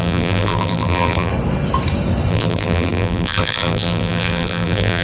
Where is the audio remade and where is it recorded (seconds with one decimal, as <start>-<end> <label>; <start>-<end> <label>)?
0.0-1.3 remade; 1.3-2.3 recorded; 2.3-5.0 remade